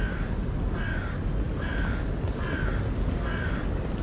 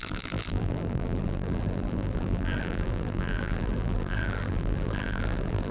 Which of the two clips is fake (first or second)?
second